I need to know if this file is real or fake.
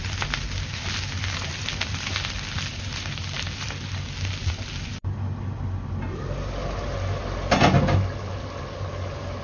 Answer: real